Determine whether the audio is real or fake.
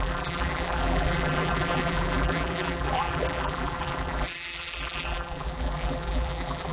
fake